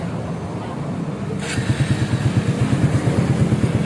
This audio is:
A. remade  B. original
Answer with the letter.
B